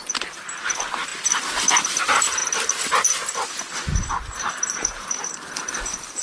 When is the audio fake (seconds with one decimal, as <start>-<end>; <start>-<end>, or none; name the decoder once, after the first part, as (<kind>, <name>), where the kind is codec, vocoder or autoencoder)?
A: 0.0-2.4 (vocoder, BigVGAN v2); 4.2-6.2